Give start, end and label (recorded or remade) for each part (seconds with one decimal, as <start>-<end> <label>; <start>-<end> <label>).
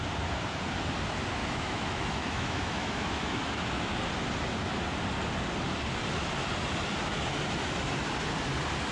0.0-1.4 recorded; 1.4-3.9 remade; 3.9-8.9 recorded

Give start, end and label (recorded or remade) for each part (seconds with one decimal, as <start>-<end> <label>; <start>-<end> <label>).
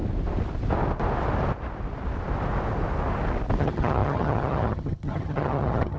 0.0-3.6 recorded; 3.6-6.0 remade